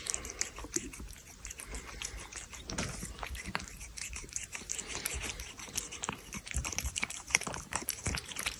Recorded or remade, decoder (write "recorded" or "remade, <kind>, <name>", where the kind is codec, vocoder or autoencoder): remade, vocoder, BigVGAN v2